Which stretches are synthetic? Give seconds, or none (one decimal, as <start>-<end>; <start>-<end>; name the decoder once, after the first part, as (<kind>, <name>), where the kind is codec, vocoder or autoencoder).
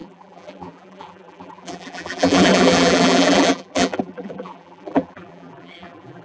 0.0-6.2 (vocoder, BigVGAN v2)